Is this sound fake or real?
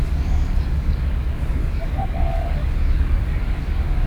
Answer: fake